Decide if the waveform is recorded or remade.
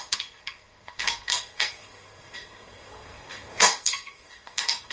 remade